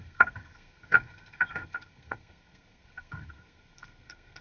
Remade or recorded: remade